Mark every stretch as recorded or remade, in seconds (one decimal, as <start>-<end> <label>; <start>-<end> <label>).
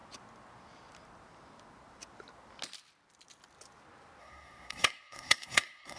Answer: 0.0-4.2 recorded; 4.2-6.0 remade